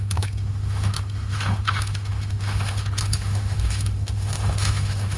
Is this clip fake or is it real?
fake